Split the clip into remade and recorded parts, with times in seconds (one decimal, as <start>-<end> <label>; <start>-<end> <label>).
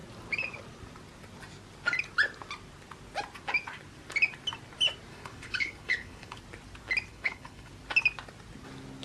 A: 0.0-5.1 recorded; 5.1-6.4 remade; 6.4-7.1 recorded; 7.1-7.7 remade; 7.7-9.0 recorded